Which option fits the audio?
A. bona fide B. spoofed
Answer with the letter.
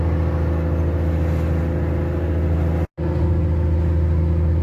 A